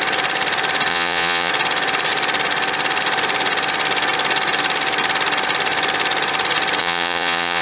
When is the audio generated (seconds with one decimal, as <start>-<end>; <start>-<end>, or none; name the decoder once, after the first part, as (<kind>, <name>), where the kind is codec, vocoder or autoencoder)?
0.9-1.5 (vocoder, Vocos); 6.8-7.6